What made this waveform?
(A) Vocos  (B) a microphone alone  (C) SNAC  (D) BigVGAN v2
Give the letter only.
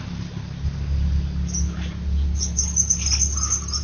B